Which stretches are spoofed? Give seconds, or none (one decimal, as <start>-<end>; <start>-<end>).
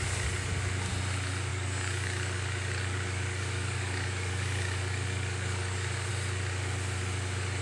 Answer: 1.5-6.1